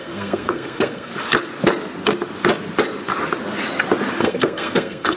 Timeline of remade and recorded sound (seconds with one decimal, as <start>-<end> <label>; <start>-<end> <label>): 0.0-1.1 remade; 1.1-4.2 recorded; 4.2-5.2 remade